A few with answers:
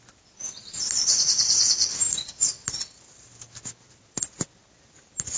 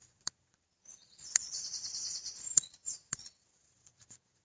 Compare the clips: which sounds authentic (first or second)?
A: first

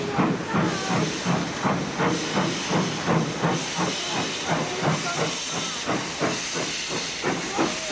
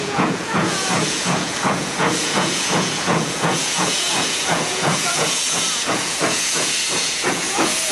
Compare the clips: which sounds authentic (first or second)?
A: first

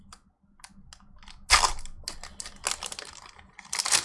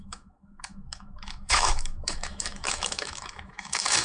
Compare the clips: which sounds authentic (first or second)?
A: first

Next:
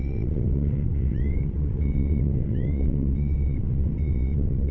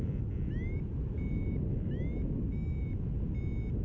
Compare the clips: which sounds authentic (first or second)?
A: second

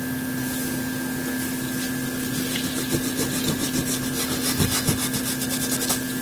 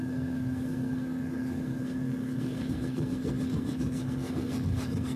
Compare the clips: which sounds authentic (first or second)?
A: first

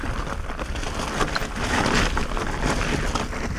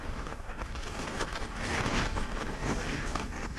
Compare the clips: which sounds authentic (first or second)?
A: first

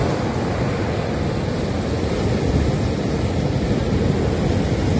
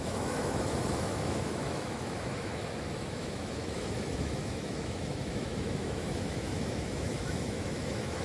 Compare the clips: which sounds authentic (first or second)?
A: first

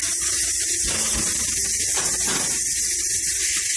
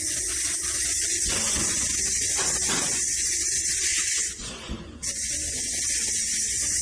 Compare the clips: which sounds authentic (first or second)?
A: first